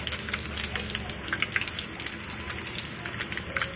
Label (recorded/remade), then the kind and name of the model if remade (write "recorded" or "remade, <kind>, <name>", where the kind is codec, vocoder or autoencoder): recorded